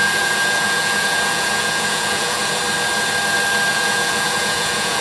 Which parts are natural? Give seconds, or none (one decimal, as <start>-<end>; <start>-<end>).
2.6-3.7